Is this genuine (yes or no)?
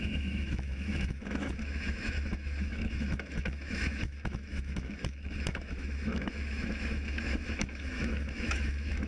no